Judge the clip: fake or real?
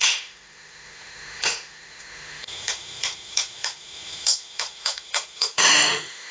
fake